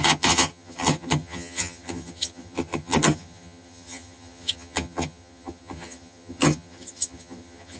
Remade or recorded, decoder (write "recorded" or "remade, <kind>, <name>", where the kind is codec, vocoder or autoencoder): remade, vocoder, HiFi-GAN